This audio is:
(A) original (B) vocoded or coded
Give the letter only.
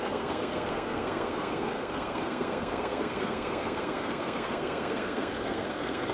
B